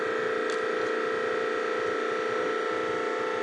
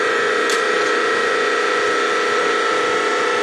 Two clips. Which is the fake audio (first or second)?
second